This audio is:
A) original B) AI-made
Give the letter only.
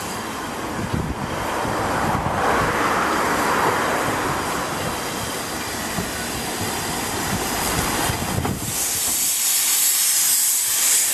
B